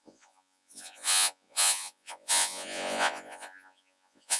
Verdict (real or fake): fake